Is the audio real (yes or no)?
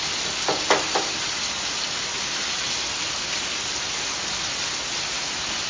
yes